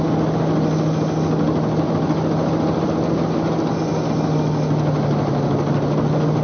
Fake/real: real